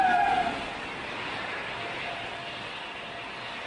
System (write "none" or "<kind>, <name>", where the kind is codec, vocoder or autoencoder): none